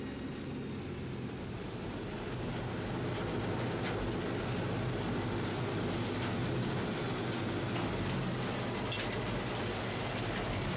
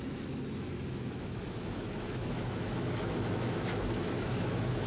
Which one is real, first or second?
first